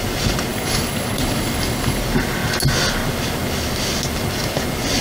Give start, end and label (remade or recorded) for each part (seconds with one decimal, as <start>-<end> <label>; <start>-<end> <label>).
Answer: 0.0-0.5 recorded; 0.5-2.0 remade; 2.0-5.0 recorded